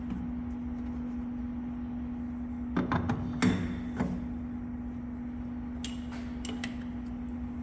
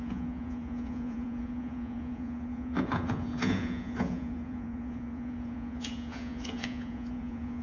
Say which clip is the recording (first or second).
first